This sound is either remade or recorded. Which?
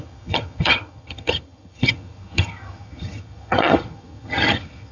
remade